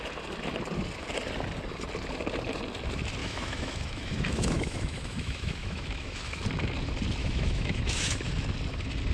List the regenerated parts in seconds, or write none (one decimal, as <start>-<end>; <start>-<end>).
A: 3.2-6.4; 7.2-8.3